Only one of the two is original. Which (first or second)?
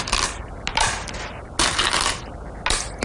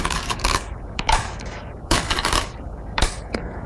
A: first